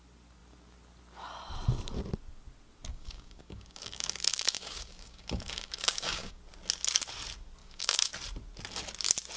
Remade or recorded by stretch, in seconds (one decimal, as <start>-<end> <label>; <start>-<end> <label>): 0.0-2.9 recorded; 2.9-6.4 remade; 6.4-7.6 recorded; 7.6-8.1 remade; 8.1-9.4 recorded